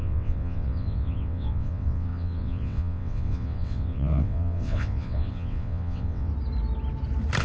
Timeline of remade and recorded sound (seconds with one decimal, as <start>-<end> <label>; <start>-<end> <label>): 0.0-6.3 remade; 6.3-7.4 recorded